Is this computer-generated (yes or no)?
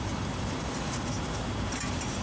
yes